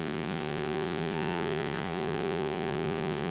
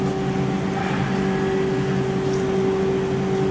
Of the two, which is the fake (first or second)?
first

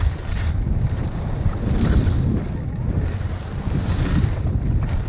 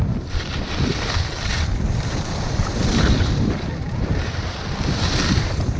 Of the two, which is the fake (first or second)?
second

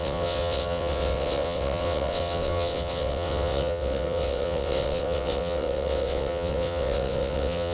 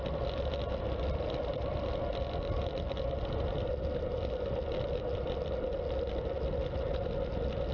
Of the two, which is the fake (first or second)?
first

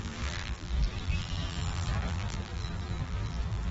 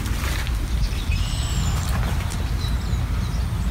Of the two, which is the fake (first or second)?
first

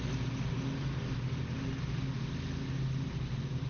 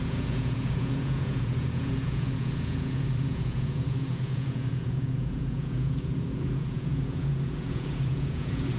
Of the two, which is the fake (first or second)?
second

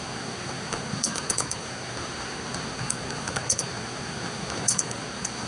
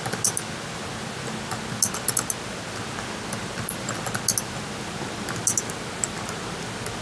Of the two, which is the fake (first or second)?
first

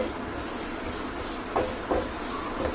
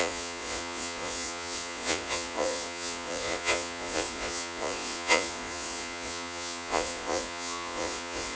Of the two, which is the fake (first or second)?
second